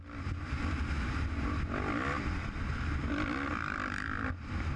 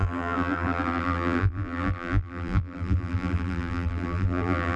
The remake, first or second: second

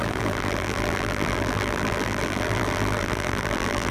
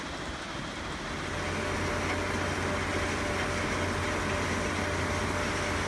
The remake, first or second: first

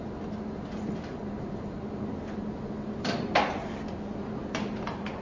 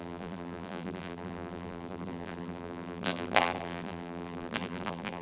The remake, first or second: second